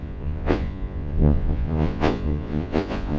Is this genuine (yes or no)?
no